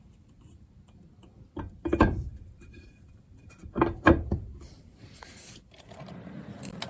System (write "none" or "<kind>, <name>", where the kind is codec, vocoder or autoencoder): vocoder, BigVGAN v2